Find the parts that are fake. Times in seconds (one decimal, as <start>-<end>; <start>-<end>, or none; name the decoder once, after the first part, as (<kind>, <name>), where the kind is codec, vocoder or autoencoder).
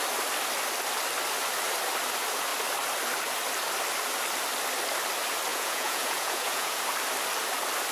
5.5-6.8 (vocoder, Vocos)